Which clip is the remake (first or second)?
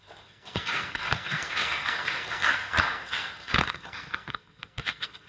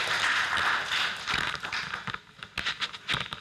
first